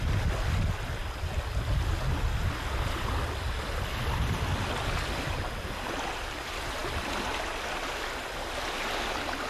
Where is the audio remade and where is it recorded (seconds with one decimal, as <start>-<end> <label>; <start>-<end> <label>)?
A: 0.0-9.5 recorded